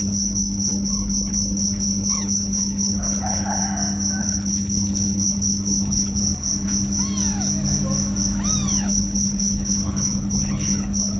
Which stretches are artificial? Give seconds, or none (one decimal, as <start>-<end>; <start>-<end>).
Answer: 0.0-3.6; 4.2-6.2; 8.8-11.2